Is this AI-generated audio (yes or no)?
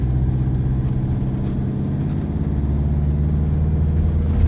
no